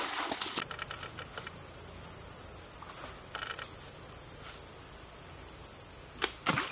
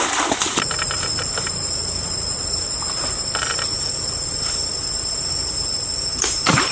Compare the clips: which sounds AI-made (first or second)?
second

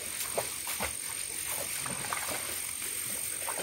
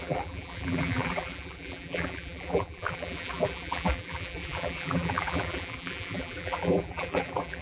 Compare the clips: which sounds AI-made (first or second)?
second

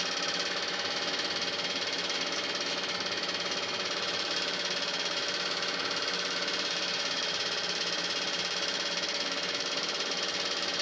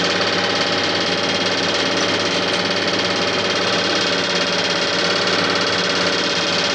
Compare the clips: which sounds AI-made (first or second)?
first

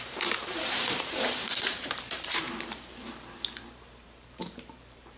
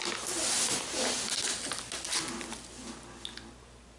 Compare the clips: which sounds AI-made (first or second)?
first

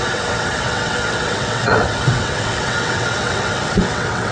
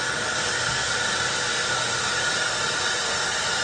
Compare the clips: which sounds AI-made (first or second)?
first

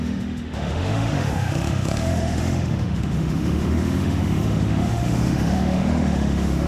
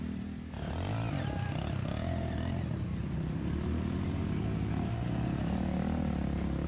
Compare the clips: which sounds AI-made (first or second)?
first